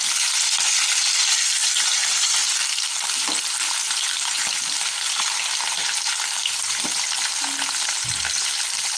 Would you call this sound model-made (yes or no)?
no